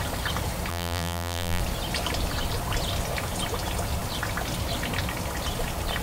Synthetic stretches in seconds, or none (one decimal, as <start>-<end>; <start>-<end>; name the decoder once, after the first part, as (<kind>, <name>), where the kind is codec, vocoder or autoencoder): 0.7-1.6 (vocoder, BigVGAN v2)